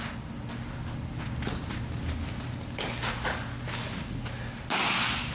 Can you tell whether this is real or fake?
real